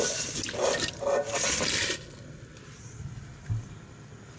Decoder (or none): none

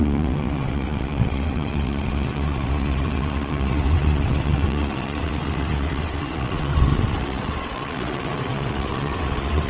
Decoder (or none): vocoder, WaveNeXt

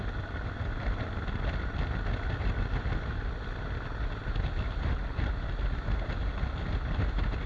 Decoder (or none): none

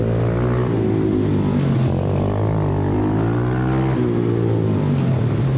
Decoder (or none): none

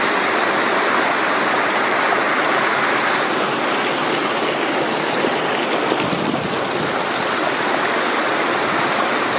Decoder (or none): none